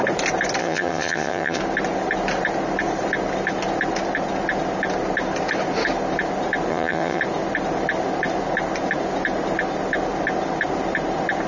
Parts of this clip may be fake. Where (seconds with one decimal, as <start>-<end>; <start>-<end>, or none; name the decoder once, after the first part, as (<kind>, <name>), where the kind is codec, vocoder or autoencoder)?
0.6-1.6 (vocoder, HiFi-GAN); 6.7-7.2